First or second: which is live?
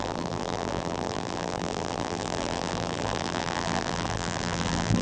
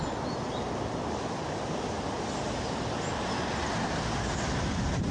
second